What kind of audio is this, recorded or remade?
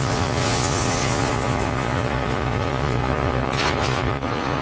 remade